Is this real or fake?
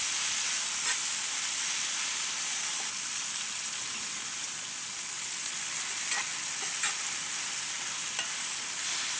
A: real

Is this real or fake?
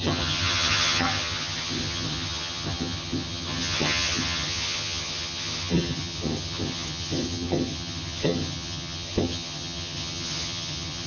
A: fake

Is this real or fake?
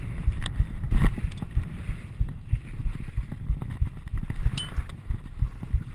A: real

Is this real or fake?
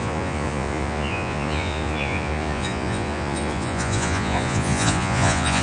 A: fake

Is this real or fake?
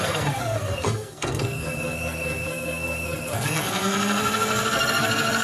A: fake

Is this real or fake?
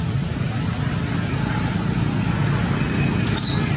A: real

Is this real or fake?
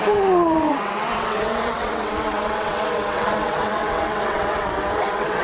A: fake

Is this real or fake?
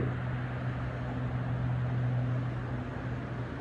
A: real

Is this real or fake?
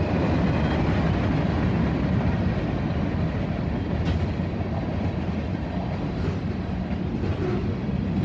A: real